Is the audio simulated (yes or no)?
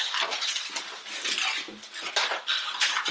no